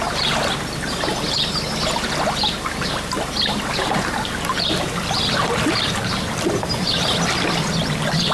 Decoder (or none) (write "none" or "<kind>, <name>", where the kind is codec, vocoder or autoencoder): none